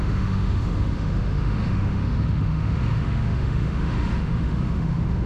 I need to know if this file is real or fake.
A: fake